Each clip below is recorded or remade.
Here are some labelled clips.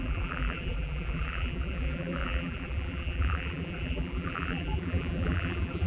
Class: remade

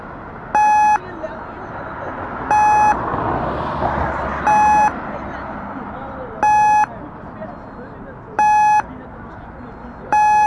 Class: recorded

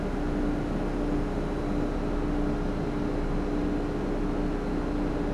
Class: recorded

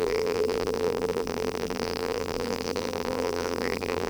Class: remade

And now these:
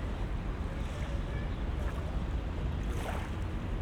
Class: recorded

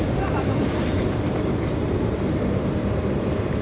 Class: remade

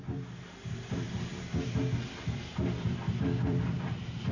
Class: remade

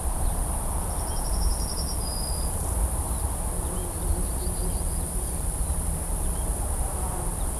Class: remade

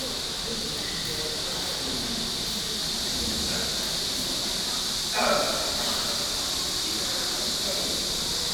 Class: recorded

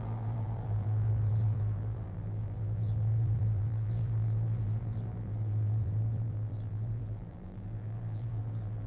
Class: remade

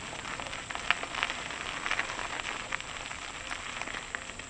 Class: recorded